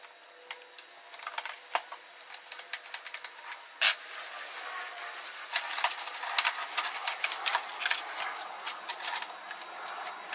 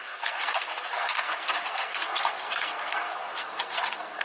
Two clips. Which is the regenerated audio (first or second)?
second